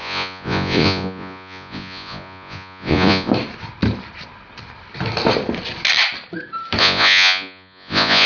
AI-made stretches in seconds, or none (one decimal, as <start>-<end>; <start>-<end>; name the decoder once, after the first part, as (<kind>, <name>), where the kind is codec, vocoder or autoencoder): 0.0-3.3 (vocoder, Vocos); 6.8-8.3